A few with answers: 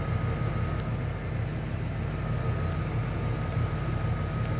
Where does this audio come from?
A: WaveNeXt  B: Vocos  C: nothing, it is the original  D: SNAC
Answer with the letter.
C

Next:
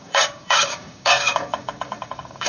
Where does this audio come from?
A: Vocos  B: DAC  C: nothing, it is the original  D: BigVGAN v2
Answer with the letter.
B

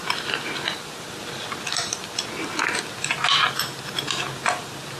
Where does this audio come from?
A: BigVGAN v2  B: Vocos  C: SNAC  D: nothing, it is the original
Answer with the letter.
D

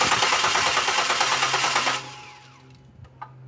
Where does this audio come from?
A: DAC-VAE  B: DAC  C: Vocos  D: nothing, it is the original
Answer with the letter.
D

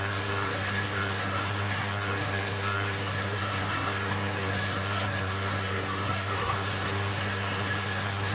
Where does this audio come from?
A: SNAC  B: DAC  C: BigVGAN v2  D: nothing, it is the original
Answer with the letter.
A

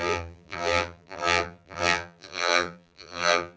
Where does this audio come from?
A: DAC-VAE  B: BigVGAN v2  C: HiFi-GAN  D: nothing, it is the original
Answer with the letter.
B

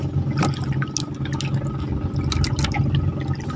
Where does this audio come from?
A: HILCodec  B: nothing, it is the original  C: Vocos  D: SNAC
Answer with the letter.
B